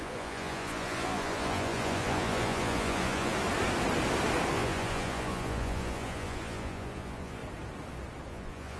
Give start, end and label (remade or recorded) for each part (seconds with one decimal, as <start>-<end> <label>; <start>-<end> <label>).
0.0-3.3 remade; 3.3-4.5 recorded; 4.5-7.4 remade; 7.4-8.3 recorded; 8.3-8.8 remade